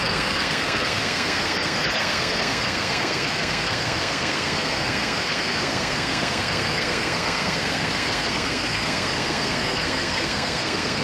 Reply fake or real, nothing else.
fake